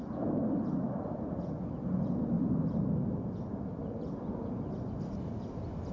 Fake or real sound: real